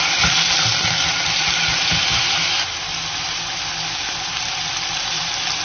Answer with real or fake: real